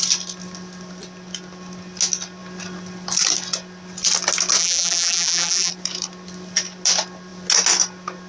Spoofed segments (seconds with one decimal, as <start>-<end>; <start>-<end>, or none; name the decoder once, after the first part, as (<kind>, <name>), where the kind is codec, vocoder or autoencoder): 4.6-5.7 (vocoder, BigVGAN v2)